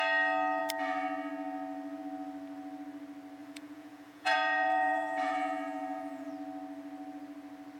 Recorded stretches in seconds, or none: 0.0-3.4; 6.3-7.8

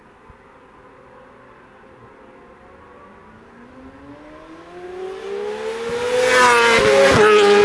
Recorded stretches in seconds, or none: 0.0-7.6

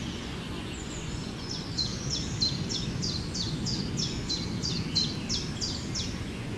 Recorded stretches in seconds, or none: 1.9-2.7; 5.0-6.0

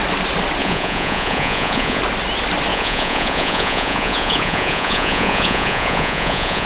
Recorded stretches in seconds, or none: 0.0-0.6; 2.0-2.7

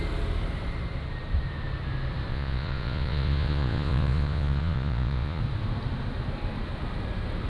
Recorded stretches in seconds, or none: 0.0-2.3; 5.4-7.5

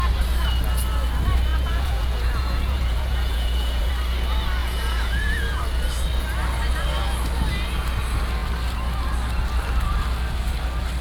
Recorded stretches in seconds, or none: 0.0-1.5; 3.9-4.6; 5.6-11.0